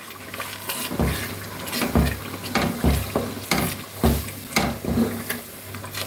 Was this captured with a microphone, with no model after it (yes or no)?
yes